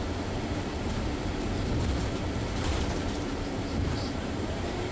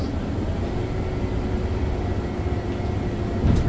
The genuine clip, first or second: second